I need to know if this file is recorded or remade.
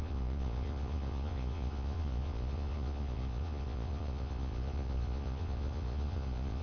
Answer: remade